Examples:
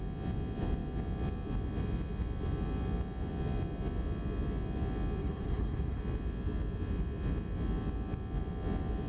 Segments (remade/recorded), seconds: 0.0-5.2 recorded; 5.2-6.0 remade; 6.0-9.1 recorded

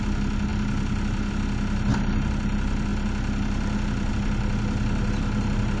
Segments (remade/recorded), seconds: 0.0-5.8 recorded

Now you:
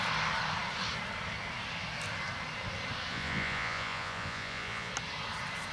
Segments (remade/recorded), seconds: 0.0-3.1 recorded; 3.1-4.9 remade; 4.9-5.7 recorded

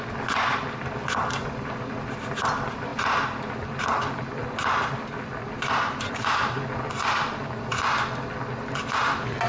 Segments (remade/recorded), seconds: 0.0-7.7 remade; 7.7-9.0 recorded; 9.0-9.5 remade

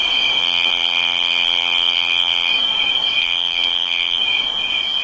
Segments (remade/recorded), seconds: 0.0-0.4 recorded; 0.4-2.5 remade; 2.5-3.2 recorded; 3.2-4.2 remade; 4.2-5.0 recorded

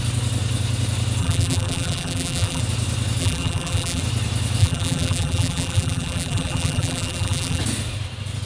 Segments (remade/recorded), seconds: 0.0-1.2 recorded; 1.2-2.6 remade; 2.6-3.2 recorded; 3.2-4.0 remade; 4.0-4.6 recorded; 4.6-7.6 remade; 7.6-8.5 recorded